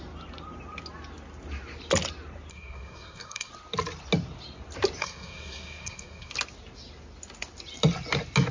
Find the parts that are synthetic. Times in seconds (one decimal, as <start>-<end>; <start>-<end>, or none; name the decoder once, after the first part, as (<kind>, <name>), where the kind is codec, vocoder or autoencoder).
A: 2.5-3.5 (codec, SNAC); 5.0-6.3